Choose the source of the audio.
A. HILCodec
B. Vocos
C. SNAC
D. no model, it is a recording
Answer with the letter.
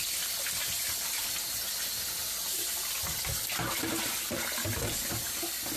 D